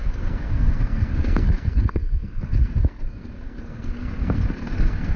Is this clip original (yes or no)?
no